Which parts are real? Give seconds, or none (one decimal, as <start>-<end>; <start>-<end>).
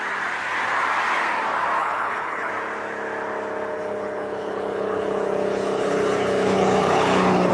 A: 0.0-1.8; 2.5-3.7